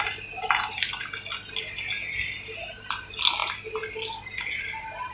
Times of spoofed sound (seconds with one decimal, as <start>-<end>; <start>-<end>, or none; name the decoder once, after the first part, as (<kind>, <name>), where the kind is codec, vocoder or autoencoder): none